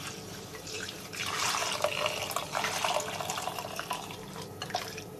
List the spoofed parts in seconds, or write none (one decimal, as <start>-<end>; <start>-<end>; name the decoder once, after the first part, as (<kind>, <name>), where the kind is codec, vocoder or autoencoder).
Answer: 0.0-1.6 (vocoder, BigVGAN v2); 3.3-5.2